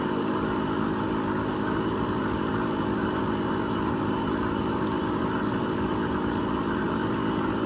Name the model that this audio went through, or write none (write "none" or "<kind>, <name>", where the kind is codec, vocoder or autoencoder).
vocoder, BigVGAN v2